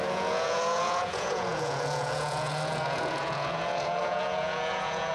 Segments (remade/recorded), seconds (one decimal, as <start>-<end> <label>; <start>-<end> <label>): 0.0-5.1 remade